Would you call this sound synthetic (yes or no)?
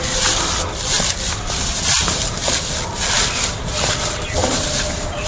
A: no